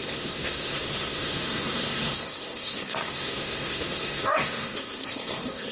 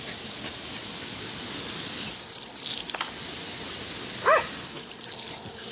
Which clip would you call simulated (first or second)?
first